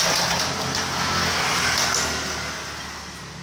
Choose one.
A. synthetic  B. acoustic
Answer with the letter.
B